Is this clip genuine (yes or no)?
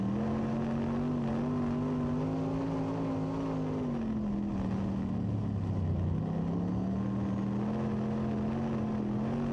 yes